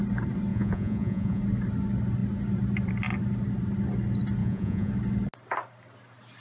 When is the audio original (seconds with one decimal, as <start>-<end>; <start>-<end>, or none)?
0.0-0.5; 1.4-4.4; 4.9-6.4